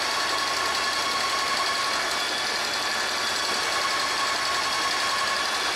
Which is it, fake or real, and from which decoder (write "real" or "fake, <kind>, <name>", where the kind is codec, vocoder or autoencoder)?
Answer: real